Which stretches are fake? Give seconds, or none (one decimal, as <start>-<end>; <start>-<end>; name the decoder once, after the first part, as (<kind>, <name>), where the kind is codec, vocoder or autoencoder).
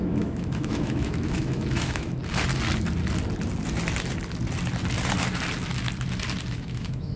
0.0-2.2 (autoencoder, DAC-VAE); 6.5-7.2